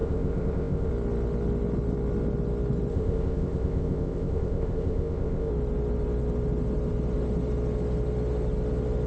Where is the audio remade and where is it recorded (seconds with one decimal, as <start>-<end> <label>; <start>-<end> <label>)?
0.0-0.9 remade; 0.9-2.9 recorded; 2.9-5.5 remade; 5.5-9.1 recorded